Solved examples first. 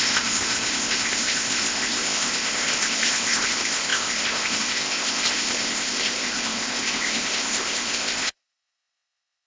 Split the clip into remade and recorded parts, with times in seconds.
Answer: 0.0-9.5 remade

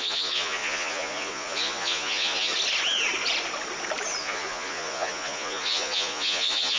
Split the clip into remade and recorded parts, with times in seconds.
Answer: 0.0-2.5 remade; 2.5-4.2 recorded; 4.2-6.8 remade